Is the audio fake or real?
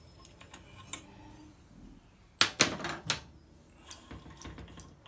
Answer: real